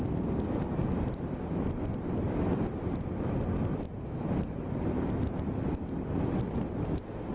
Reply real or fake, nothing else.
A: fake